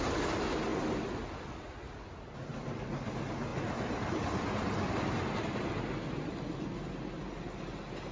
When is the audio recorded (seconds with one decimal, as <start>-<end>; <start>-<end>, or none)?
0.0-8.1